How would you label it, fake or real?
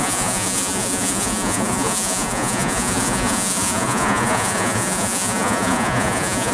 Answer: fake